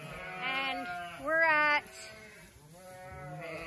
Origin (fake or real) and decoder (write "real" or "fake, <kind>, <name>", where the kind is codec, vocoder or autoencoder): real